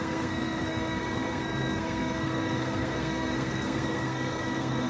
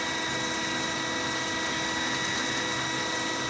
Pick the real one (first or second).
second